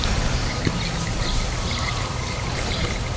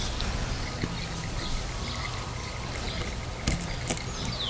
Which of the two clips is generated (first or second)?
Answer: first